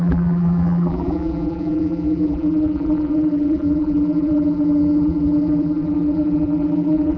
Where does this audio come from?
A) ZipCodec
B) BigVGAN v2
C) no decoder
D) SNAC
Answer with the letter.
B